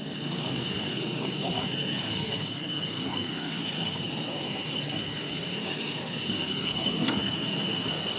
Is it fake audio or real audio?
fake